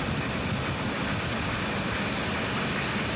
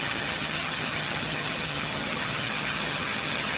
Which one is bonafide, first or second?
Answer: first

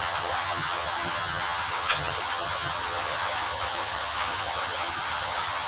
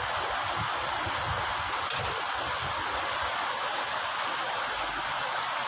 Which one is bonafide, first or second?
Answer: second